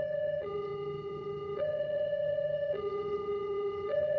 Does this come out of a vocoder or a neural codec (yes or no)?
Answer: yes